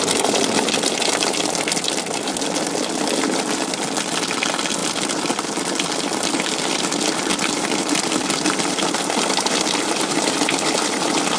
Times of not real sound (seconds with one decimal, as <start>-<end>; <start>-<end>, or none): none